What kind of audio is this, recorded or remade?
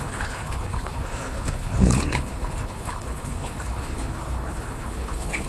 remade